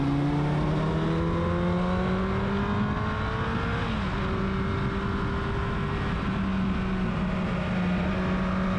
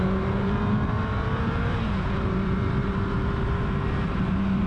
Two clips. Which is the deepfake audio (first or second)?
second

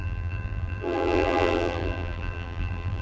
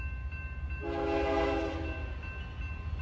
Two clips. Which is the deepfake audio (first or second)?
first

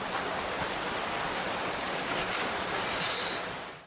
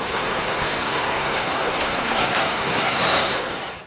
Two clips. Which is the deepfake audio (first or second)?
second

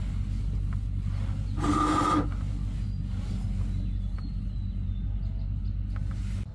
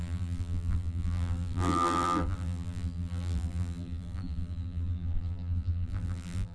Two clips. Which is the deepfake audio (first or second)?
second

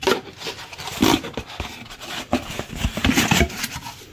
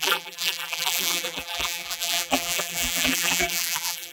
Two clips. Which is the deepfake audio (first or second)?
second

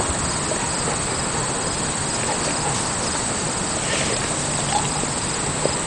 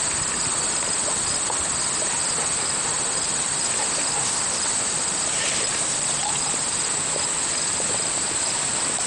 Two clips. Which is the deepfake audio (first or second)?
second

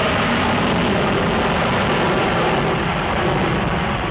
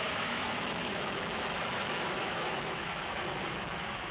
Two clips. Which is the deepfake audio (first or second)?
second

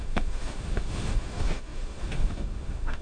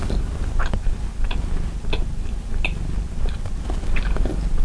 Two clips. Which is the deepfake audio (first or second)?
first